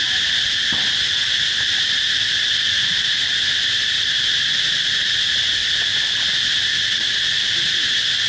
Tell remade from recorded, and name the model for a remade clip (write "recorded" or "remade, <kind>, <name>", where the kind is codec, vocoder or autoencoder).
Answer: recorded